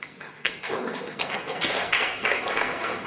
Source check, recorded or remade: remade